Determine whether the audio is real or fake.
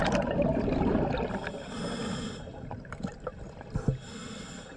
real